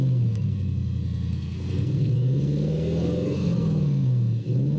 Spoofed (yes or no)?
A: yes